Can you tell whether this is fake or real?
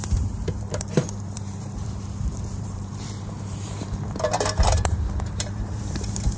fake